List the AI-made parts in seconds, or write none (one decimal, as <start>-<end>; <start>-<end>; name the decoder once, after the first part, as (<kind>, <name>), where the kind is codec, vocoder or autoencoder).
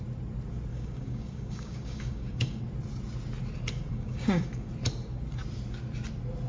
0.7-2.6 (codec, DAC); 3.9-4.7